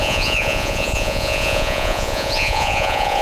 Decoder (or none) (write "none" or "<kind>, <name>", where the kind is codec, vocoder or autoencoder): vocoder, Vocos